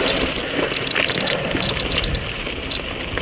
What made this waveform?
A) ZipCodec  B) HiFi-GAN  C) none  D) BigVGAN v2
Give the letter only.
C